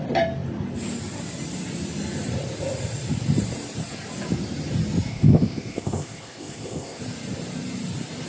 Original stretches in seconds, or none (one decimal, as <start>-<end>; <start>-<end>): 0.0-5.1; 7.0-8.3